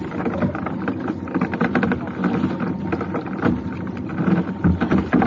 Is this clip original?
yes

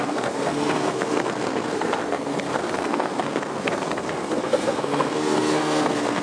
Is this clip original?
no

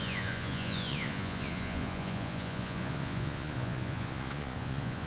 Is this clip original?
no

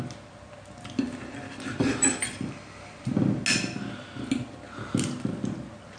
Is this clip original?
yes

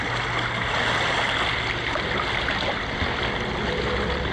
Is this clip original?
yes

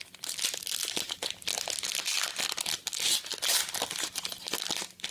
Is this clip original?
yes